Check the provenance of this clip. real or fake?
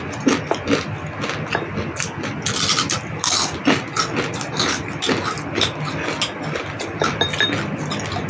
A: real